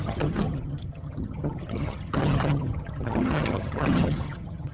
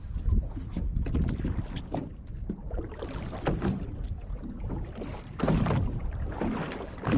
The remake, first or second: first